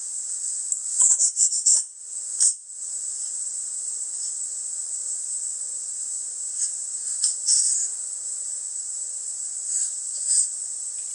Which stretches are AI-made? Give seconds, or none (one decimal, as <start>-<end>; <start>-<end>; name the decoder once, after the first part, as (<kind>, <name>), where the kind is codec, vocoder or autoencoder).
0.0-1.9 (vocoder, BigVGAN v2); 2.8-7.9; 8.7-11.1